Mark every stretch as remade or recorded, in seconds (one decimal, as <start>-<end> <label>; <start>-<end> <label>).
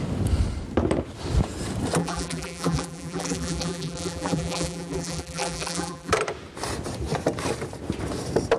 0.0-2.0 recorded; 2.0-6.1 remade; 6.1-8.6 recorded